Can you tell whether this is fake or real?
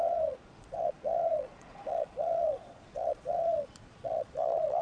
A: fake